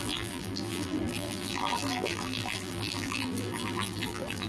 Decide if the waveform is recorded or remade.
remade